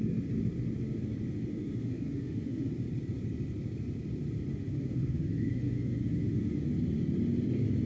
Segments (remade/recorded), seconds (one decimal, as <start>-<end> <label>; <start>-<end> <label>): 0.0-1.5 recorded; 1.5-2.7 remade; 2.7-4.5 recorded; 4.5-6.7 remade; 6.7-7.9 recorded